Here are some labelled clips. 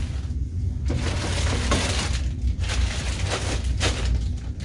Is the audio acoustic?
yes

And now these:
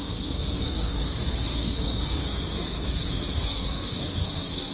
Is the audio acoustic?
no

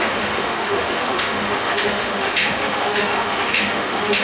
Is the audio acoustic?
no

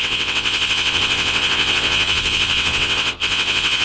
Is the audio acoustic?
no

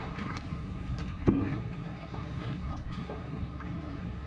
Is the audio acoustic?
no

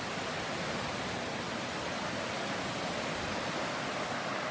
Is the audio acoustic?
yes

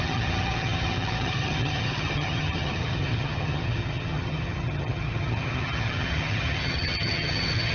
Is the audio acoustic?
no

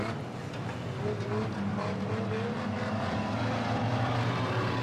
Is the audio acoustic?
yes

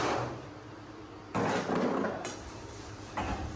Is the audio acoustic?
yes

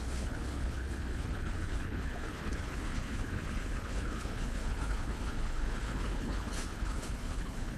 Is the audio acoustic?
no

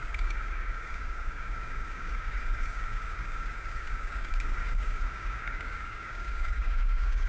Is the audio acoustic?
no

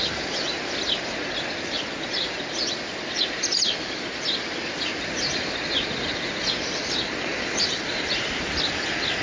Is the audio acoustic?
yes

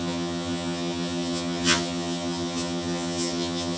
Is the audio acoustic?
no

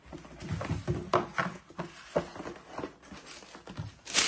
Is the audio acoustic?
yes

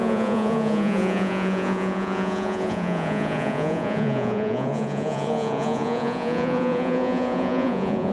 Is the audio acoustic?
no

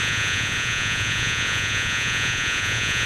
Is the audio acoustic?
no